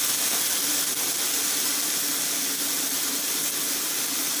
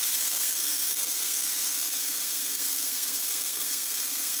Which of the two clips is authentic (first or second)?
first